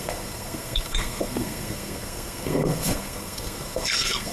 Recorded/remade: remade